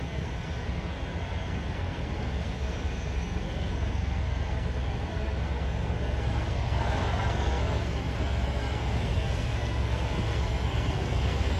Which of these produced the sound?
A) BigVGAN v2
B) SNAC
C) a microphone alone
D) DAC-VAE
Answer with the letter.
B